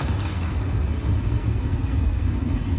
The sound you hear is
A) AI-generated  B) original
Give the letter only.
A